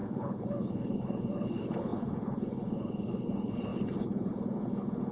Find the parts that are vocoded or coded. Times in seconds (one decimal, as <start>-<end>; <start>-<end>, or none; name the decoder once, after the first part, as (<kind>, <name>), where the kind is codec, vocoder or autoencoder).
0.0-5.1 (codec, HILCodec)